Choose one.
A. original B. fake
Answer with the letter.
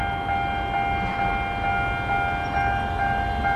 A